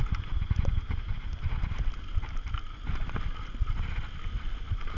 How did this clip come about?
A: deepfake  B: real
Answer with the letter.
B